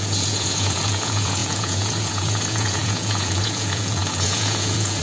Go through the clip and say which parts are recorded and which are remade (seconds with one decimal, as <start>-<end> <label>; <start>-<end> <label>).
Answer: 0.0-5.0 remade